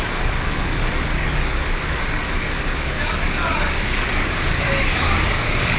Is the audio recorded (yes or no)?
no